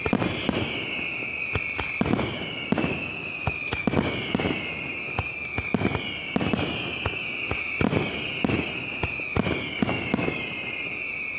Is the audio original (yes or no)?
yes